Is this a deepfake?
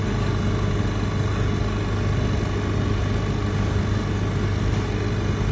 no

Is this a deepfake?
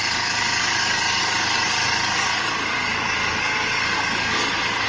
yes